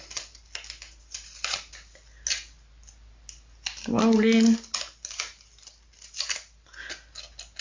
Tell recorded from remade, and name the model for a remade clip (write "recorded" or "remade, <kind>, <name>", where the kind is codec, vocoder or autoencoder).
recorded